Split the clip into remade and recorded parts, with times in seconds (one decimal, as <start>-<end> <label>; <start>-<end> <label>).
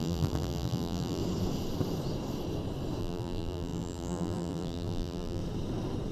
0.0-1.2 remade; 1.2-3.0 recorded; 3.0-5.4 remade; 5.4-6.1 recorded